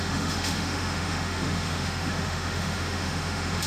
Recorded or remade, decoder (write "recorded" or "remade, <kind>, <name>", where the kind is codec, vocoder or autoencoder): remade, autoencoder, DAC-VAE